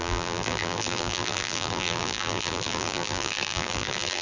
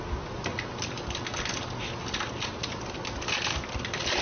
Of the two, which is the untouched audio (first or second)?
second